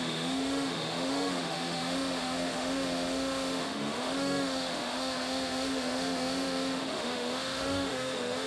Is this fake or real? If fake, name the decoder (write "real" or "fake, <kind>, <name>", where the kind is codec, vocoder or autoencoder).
fake, autoencoder, DAC-VAE